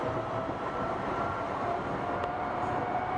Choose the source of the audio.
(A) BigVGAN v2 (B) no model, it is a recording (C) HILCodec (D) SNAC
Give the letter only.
A